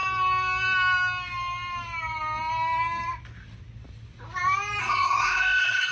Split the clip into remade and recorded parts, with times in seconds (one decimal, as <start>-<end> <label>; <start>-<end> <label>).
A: 0.0-4.8 recorded; 4.8-5.9 remade